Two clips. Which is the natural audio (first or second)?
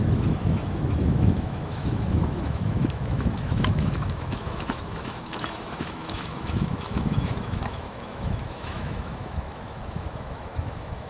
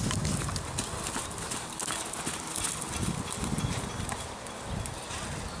second